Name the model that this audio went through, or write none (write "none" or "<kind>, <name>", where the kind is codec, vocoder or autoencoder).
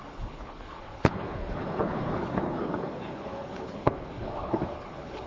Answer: codec, HILCodec